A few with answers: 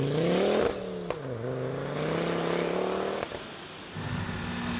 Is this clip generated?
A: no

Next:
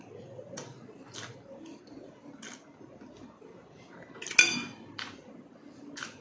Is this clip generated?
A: no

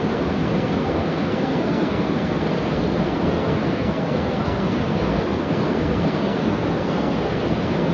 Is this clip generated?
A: yes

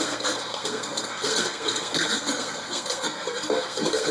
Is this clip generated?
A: yes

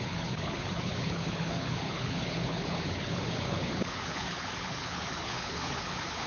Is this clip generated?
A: yes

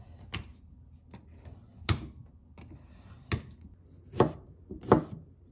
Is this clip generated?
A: no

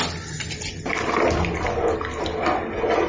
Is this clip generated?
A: no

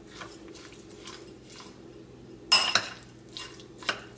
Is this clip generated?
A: no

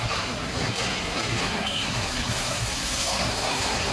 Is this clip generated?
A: yes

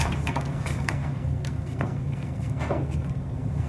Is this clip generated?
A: yes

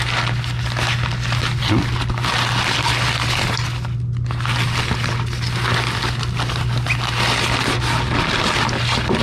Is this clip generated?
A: no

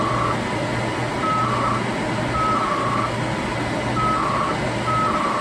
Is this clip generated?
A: no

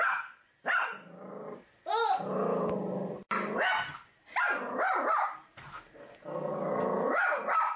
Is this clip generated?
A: no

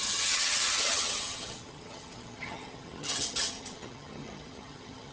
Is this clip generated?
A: yes